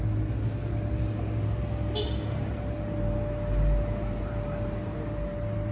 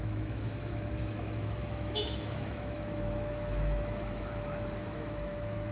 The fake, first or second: second